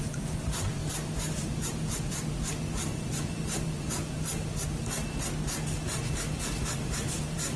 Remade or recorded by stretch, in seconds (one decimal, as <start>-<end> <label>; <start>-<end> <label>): 0.0-4.8 remade; 4.8-5.7 recorded; 5.7-7.6 remade